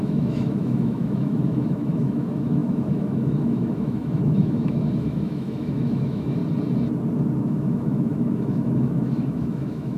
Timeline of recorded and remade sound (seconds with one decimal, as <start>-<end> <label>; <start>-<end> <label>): 0.0-6.4 remade; 6.4-7.4 recorded; 7.4-10.0 remade